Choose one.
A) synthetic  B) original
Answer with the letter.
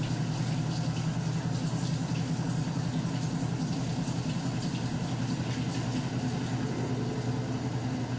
B